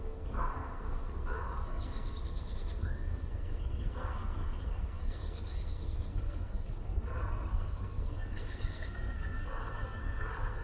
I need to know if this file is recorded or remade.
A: remade